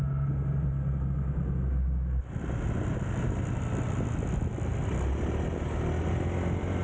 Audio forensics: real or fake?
real